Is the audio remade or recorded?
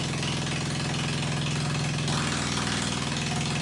recorded